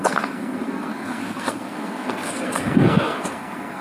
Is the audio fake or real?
fake